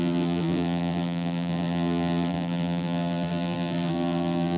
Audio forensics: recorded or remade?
remade